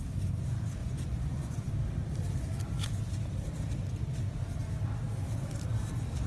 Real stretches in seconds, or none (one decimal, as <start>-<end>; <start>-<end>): 0.0-0.8; 1.7-6.3